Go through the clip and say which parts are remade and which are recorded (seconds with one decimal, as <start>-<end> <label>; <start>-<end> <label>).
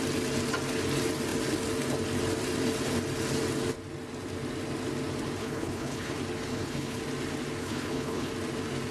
0.0-5.4 recorded; 5.4-6.1 remade; 6.1-6.5 recorded; 6.5-7.0 remade; 7.0-7.6 recorded; 7.6-8.3 remade; 8.3-8.9 recorded